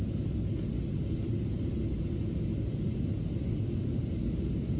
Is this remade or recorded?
recorded